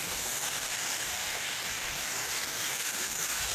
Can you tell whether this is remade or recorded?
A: remade